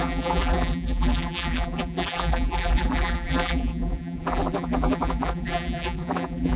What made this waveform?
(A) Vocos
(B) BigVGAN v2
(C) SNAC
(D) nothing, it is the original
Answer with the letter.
B